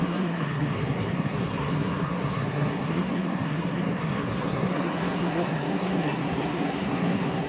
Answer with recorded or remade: remade